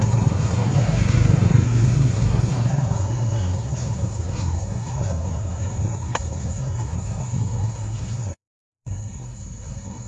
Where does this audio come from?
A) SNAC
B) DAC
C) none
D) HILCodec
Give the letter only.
A